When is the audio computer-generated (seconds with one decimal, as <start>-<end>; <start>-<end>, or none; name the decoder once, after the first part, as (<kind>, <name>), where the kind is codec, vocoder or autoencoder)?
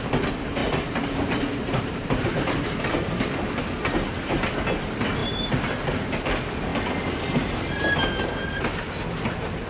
0.6-3.1 (vocoder, BigVGAN v2); 5.2-5.7